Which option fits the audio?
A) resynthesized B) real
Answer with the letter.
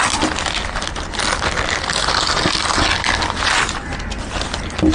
B